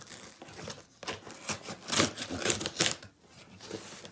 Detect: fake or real real